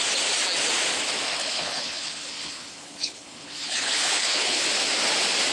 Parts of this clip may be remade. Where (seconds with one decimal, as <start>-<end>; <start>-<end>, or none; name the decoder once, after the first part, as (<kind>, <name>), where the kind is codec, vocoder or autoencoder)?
1.4-4.7 (codec, HILCodec)